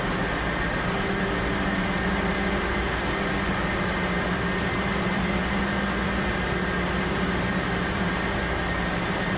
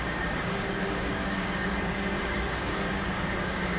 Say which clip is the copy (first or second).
second